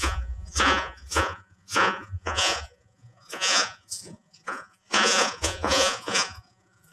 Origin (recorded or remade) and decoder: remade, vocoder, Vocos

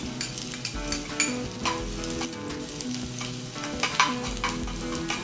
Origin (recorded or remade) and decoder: recorded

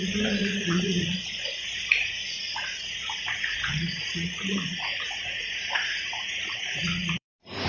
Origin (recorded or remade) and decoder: remade, vocoder, Vocos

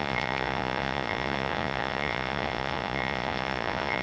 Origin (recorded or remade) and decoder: remade, vocoder, Vocos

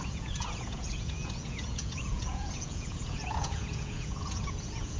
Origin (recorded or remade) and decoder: remade, vocoder, Vocos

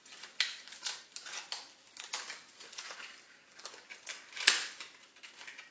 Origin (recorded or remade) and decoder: recorded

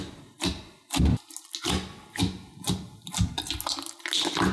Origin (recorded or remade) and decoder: recorded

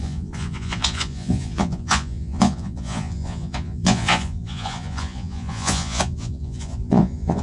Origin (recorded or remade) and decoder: remade, vocoder, Vocos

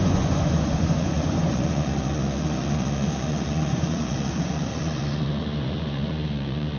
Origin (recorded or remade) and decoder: remade, vocoder, Vocos